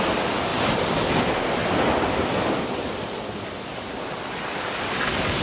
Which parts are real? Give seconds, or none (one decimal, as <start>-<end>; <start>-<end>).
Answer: 0.0-5.4